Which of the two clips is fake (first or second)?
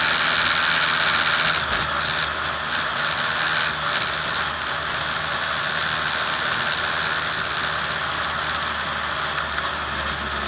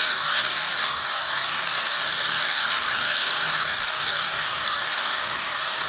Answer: second